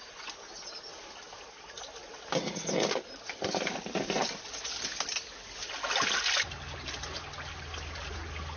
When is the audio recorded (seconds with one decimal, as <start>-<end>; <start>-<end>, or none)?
0.0-8.6